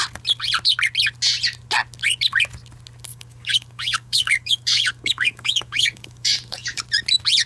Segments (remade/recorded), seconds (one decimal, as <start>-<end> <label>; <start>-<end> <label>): 0.0-3.1 recorded; 3.1-6.8 remade; 6.8-7.5 recorded